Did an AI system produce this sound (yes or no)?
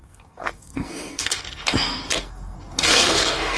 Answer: yes